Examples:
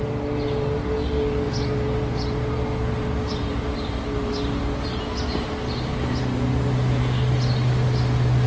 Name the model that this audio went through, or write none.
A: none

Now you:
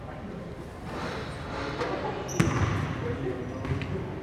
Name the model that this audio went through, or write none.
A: none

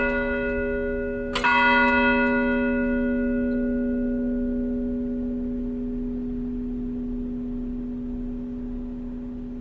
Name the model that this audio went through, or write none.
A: none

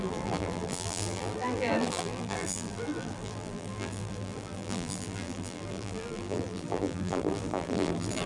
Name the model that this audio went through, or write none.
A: vocoder, BigVGAN v2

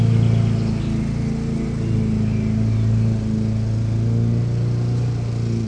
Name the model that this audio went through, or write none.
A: none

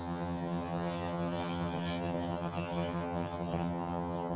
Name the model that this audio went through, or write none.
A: vocoder, HiFi-GAN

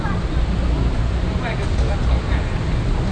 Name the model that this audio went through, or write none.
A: none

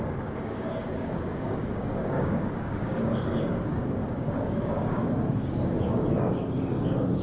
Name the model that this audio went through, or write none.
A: codec, DAC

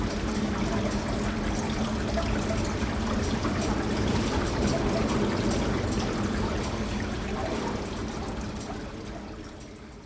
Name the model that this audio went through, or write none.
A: none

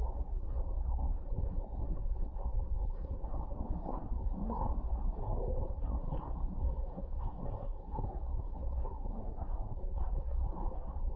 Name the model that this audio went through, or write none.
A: codec, SNAC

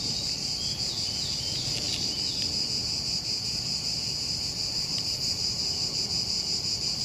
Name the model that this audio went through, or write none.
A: none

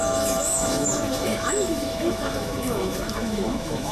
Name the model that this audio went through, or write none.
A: autoencoder, DAC-VAE